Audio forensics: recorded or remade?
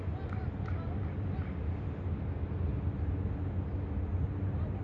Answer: recorded